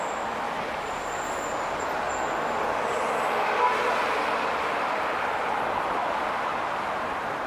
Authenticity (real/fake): real